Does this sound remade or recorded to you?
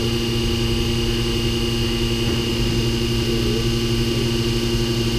recorded